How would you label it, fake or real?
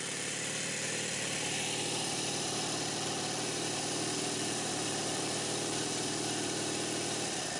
fake